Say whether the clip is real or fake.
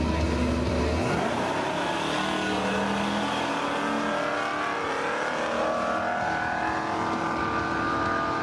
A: real